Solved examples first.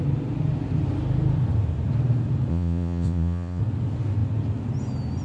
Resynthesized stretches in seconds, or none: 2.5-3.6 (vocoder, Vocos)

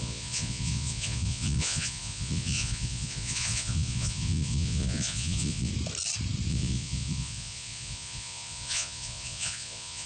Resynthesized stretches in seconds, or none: 0.0-5.7 (vocoder, Vocos); 6.5-10.1

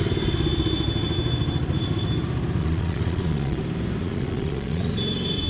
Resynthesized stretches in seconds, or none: 2.6-3.6 (vocoder, Vocos); 4.0-4.9

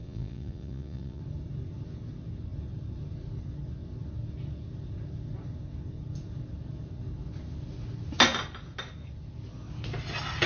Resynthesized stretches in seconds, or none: 0.0-1.2 (vocoder, Vocos)